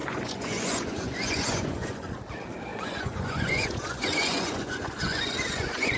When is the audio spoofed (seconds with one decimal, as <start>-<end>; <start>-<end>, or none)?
0.0-2.1; 2.7-6.0